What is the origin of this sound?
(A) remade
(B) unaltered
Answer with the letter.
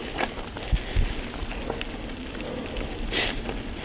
B